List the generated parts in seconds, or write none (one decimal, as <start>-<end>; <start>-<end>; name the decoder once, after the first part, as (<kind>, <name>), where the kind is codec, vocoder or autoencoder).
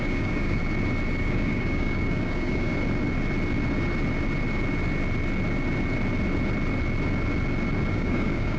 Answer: 0.0-0.6 (codec, DAC); 1.2-2.7; 7.9-8.6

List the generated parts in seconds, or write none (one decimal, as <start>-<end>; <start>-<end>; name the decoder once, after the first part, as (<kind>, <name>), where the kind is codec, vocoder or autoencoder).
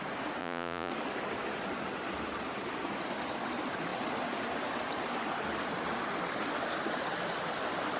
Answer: 0.4-0.9 (vocoder, Vocos)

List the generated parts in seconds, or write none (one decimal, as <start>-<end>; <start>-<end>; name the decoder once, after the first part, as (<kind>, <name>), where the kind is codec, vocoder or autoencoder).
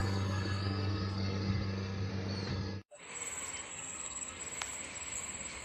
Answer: 0.0-2.1 (codec, SNAC); 2.5-3.0; 3.7-4.4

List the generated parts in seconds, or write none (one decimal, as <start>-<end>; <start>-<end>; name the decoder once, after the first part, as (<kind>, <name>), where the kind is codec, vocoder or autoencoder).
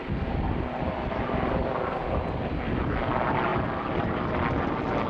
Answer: 3.5-4.3 (vocoder, BigVGAN v2)